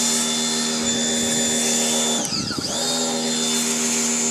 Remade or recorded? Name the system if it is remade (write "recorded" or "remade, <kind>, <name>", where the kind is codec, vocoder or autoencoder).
recorded